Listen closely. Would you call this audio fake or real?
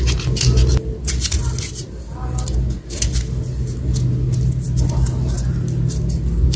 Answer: real